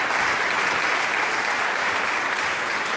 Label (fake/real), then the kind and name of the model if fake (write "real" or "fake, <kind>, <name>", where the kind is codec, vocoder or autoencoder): real